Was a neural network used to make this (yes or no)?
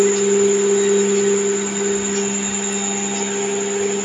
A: no